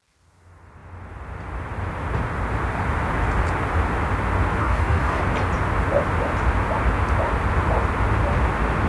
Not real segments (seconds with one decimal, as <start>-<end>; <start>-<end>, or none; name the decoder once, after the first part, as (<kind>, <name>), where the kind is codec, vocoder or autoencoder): 4.6-5.2 (codec, DAC)